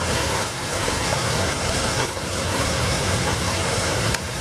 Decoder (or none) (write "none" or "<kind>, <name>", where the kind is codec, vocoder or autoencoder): codec, SNAC